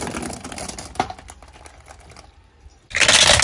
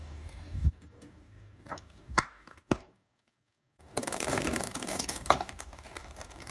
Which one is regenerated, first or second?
second